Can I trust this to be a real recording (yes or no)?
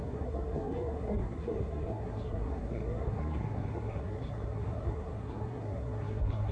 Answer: no